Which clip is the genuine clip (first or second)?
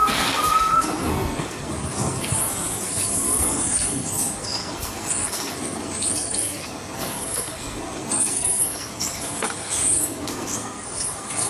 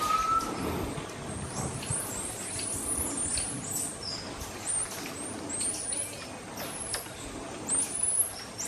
second